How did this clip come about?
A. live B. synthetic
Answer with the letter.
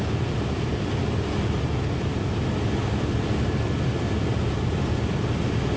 A